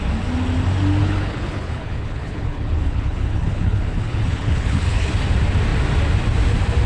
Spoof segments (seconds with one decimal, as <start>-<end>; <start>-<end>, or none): 1.0-5.1